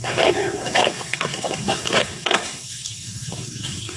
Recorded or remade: remade